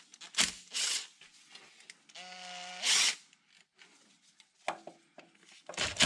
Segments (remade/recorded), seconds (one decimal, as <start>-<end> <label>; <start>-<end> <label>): 0.0-6.1 recorded

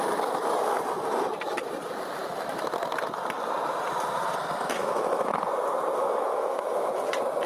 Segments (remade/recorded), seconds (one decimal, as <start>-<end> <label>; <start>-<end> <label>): 0.0-2.2 recorded; 2.2-2.7 remade; 2.7-4.8 recorded; 4.8-5.4 remade; 5.4-6.0 recorded; 6.0-6.9 remade; 6.9-7.5 recorded

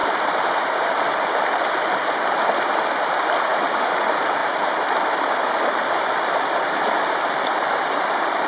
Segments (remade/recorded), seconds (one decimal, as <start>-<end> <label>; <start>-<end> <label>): 0.0-3.5 remade; 3.5-4.0 recorded; 4.0-8.5 remade